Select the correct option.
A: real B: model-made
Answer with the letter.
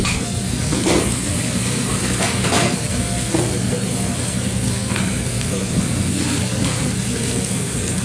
B